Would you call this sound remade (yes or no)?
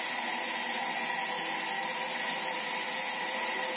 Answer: no